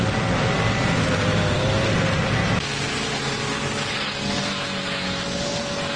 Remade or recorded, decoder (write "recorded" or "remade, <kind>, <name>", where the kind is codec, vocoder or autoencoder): recorded